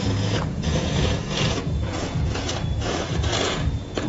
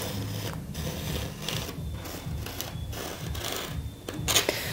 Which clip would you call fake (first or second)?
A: first